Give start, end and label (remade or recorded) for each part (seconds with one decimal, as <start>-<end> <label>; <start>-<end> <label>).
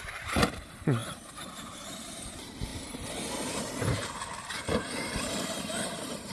0.0-2.7 remade; 2.7-3.6 recorded; 3.6-6.3 remade